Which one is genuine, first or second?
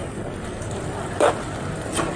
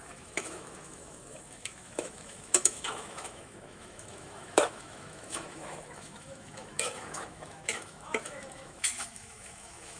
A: first